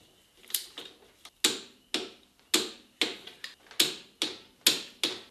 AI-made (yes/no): no